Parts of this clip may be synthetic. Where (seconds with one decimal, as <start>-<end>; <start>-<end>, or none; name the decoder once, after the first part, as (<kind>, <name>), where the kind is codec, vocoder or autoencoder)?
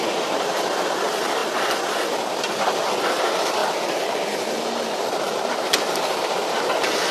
3.6-4.3 (vocoder, BigVGAN v2)